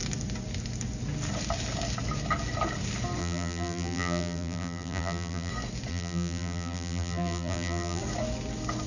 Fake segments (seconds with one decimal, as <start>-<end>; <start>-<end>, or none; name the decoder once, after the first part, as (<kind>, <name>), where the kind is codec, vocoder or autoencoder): 3.2-5.5 (vocoder, BigVGAN v2); 5.9-8.0